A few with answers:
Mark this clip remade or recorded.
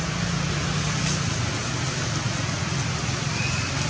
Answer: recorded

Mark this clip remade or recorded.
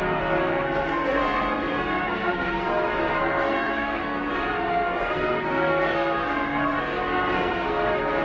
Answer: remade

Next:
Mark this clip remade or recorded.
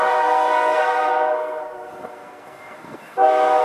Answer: remade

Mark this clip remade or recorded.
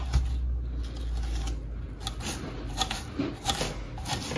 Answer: recorded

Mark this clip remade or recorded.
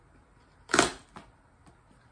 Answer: recorded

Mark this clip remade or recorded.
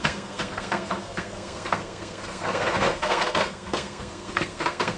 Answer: remade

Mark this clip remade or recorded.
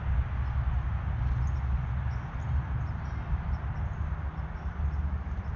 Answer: recorded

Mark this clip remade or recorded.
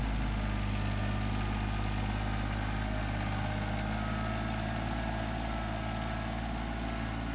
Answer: recorded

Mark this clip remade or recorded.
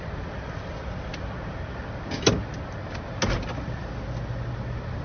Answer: recorded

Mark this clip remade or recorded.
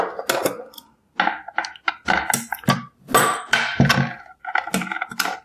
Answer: recorded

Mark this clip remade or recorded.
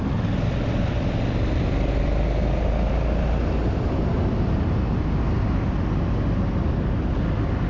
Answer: recorded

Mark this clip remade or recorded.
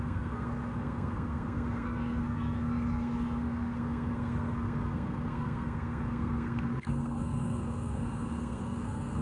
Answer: remade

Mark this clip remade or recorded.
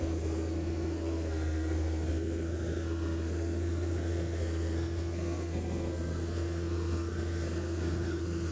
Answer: remade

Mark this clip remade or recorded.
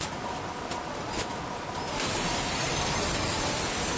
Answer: recorded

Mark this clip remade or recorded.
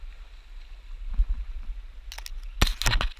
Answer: recorded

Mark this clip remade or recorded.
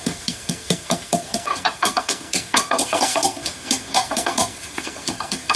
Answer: remade